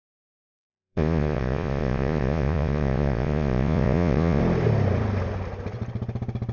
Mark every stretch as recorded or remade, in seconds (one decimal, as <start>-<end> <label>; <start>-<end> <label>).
0.0-0.5 recorded; 0.5-4.4 remade; 4.4-6.5 recorded